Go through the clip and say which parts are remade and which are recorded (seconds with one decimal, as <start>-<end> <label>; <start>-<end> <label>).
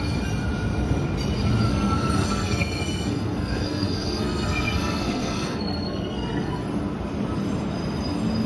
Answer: 0.0-1.7 recorded; 1.7-6.6 remade; 6.6-8.5 recorded